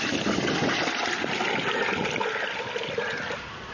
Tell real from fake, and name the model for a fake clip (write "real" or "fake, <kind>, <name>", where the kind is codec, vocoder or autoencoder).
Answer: real